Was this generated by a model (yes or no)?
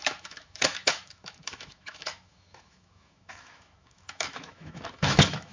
yes